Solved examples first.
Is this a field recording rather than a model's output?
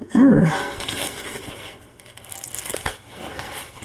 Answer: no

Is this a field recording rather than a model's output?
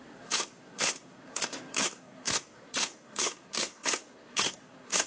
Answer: no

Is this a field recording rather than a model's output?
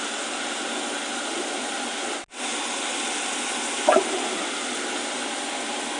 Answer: yes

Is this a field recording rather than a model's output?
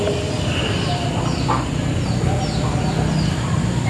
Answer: yes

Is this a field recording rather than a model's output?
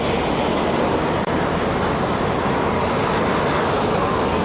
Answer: yes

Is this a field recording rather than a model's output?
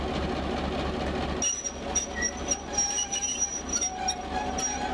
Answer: yes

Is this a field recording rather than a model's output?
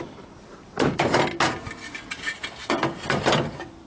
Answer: yes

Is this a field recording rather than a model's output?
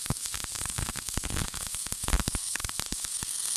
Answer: no